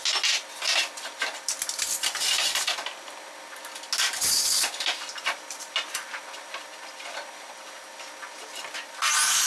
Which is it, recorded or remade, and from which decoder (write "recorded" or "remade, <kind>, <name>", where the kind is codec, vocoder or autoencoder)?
recorded